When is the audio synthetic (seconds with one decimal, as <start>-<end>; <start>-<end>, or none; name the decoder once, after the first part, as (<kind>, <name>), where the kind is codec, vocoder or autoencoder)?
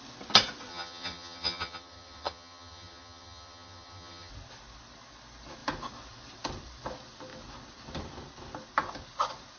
0.7-4.3 (vocoder, HiFi-GAN)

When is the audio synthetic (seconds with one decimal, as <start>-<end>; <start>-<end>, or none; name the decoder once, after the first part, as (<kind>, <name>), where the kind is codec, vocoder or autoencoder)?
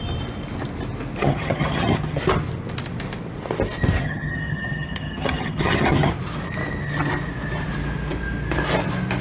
1.2-2.2 (vocoder, HiFi-GAN); 4.0-6.1